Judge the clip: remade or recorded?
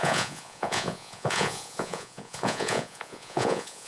remade